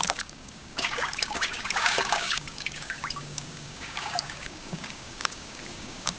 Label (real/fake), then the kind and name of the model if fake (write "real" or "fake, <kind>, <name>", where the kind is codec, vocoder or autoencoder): fake, codec, DAC